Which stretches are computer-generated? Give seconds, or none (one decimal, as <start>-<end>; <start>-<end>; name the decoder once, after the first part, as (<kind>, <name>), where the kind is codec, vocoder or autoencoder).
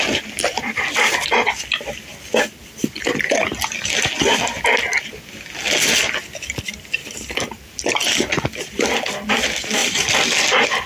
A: 2.6-3.2 (vocoder, BigVGAN v2); 7.0-9.1; 9.8-10.9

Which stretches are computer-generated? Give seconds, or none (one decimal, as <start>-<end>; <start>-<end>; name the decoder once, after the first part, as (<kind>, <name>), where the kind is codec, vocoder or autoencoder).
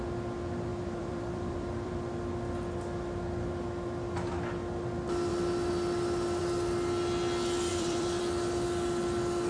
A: 0.7-1.9 (vocoder, BigVGAN v2); 7.7-8.2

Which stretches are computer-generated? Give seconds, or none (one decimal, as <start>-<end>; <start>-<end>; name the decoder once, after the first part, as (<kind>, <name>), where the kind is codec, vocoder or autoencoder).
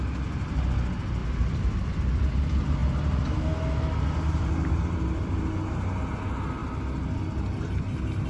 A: 1.2-2.3 (vocoder, BigVGAN v2)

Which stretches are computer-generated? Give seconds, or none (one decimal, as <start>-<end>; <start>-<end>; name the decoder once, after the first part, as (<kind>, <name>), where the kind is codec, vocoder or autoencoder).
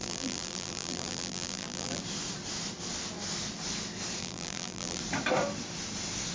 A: 0.0-2.0 (vocoder, BigVGAN v2); 4.2-5.0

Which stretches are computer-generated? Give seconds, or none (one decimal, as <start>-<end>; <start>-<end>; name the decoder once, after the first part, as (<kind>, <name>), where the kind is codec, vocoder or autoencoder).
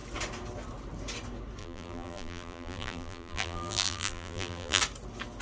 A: 1.6-4.8 (vocoder, BigVGAN v2)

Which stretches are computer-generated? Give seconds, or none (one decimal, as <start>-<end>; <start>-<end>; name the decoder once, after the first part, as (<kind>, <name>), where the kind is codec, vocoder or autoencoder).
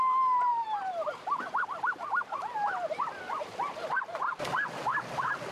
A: 0.5-3.2 (vocoder, BigVGAN v2)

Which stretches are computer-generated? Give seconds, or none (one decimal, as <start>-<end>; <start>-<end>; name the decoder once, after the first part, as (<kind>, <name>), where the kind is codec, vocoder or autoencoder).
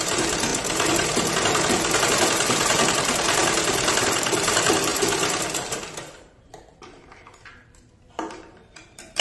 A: 0.0-9.2 (vocoder, BigVGAN v2)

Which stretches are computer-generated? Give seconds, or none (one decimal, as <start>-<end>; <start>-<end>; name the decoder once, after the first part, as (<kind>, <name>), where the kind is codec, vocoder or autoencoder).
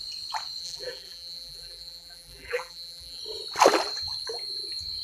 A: 0.6-3.2 (vocoder, BigVGAN v2)